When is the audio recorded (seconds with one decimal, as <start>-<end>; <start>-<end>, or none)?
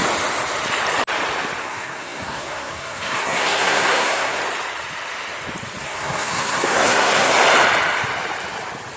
0.0-1.6; 4.4-5.8; 7.3-9.0